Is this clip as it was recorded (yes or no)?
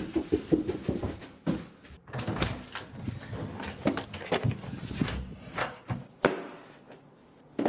yes